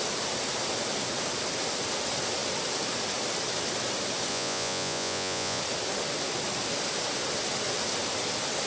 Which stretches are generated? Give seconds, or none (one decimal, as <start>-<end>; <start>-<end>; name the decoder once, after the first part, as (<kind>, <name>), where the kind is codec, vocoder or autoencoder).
4.3-5.6 (vocoder, Vocos)